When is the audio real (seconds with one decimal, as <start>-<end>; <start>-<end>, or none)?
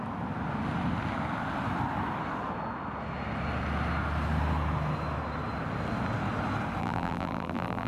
0.0-6.8